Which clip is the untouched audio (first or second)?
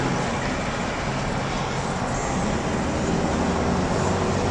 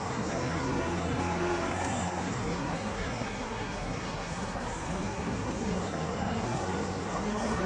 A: first